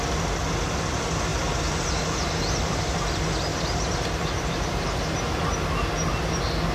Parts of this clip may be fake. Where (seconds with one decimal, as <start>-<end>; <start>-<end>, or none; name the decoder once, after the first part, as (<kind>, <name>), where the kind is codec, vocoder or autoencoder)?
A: 1.3-2.7 (vocoder, BigVGAN v2); 3.5-5.0